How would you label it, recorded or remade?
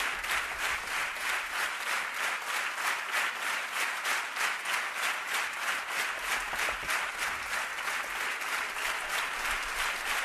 recorded